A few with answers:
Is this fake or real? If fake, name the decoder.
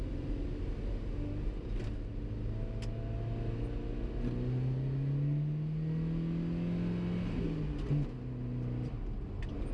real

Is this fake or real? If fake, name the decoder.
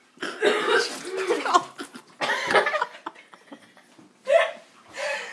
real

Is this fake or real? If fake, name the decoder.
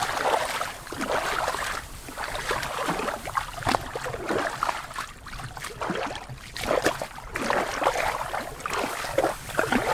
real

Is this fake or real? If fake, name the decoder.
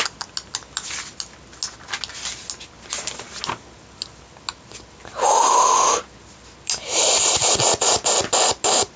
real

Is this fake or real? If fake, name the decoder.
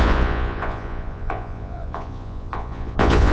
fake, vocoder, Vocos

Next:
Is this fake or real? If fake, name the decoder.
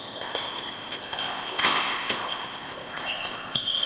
fake, codec, ZipCodec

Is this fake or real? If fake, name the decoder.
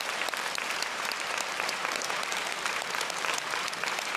fake, vocoder, BigVGAN v2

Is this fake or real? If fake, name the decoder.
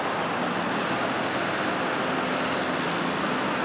real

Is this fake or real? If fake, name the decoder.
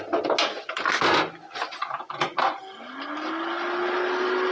real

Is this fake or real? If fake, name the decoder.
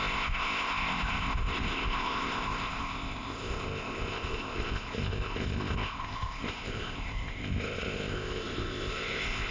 fake, codec, ZipCodec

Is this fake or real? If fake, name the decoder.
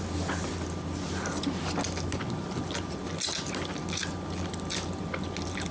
real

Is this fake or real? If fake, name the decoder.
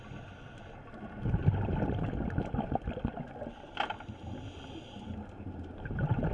real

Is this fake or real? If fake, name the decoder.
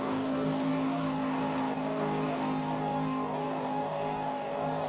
fake, codec, DAC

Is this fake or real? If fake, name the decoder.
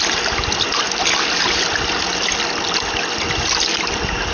real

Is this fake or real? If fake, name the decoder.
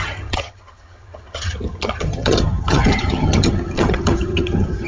fake, vocoder, HiFi-GAN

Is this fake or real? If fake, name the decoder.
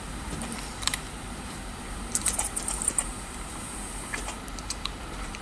fake, vocoder, BigVGAN v2